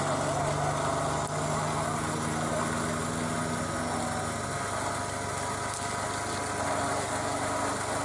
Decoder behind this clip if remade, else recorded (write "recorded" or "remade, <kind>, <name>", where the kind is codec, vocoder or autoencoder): recorded